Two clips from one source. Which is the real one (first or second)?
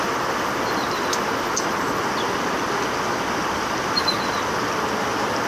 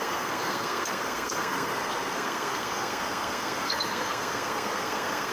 first